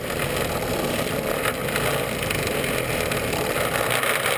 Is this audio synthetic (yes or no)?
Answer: no